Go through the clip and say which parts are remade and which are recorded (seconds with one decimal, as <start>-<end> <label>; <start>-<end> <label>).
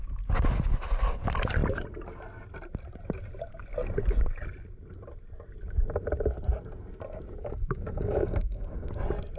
0.0-7.4 recorded; 7.4-8.9 remade; 8.9-9.4 recorded